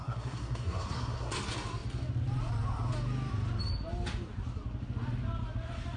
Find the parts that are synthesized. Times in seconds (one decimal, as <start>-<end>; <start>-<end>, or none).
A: 0.0-1.3